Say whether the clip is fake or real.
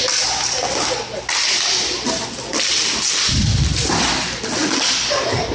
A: real